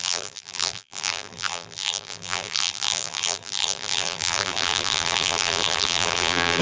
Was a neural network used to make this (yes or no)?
yes